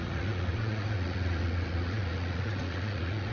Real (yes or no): no